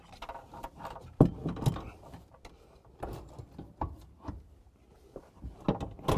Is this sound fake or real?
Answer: real